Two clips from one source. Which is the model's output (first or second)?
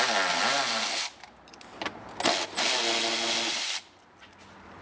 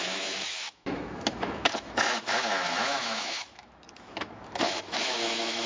second